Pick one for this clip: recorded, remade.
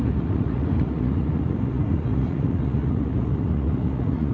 remade